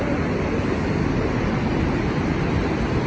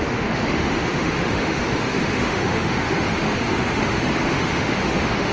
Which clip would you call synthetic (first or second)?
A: second